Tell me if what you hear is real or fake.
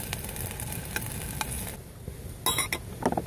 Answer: real